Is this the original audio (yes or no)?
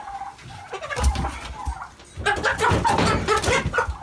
yes